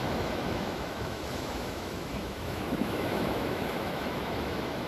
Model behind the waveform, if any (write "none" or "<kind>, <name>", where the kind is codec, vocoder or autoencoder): autoencoder, DAC-VAE